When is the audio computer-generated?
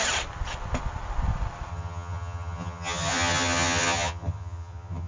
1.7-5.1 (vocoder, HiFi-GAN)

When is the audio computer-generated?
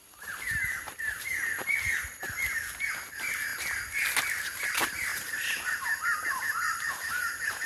0.0-1.3 (vocoder, BigVGAN v2); 2.9-3.5; 4.2-7.7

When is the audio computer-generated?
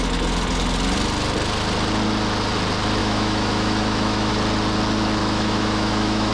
3.0-4.3 (autoencoder, DAC-VAE); 5.2-6.3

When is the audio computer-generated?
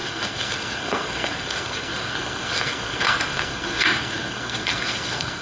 0.0-5.4 (codec, SNAC)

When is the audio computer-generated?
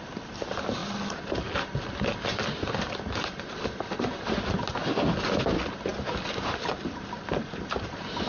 none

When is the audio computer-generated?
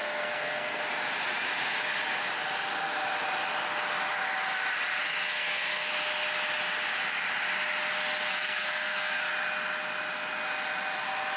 0.0-0.8 (codec, SNAC); 5.0-5.9; 8.3-9.3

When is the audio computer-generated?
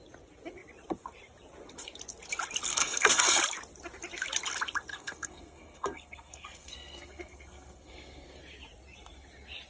2.7-3.4 (codec, SNAC); 4.9-8.4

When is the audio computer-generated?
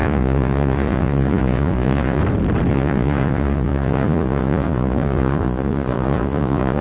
0.0-2.2 (vocoder, Vocos); 2.7-6.8